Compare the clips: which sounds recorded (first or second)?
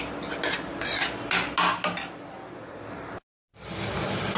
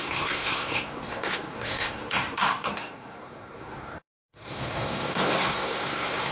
first